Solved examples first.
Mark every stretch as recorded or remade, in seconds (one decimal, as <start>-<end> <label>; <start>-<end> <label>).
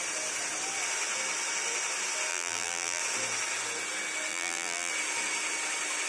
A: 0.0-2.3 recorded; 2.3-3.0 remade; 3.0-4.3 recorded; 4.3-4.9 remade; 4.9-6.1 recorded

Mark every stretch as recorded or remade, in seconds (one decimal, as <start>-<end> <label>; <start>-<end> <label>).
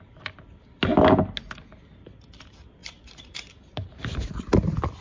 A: 0.0-2.8 recorded; 2.8-4.3 remade; 4.3-5.0 recorded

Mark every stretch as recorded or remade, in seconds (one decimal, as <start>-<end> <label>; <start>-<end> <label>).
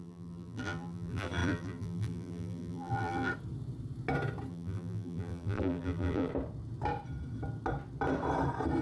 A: 0.0-3.3 remade; 3.3-4.5 recorded; 4.5-6.3 remade; 6.3-8.8 recorded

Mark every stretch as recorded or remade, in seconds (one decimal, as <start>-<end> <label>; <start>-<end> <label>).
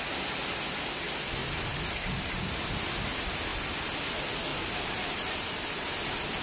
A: 0.0-1.4 recorded; 1.4-2.4 remade; 2.4-3.5 recorded; 3.5-4.1 remade; 4.1-4.5 recorded; 4.5-5.6 remade; 5.6-6.4 recorded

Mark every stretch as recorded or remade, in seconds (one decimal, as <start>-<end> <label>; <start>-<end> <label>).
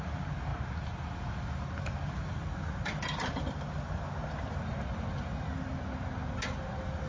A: 0.0-7.1 recorded